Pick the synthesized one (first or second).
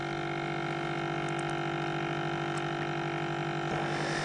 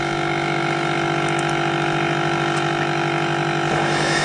second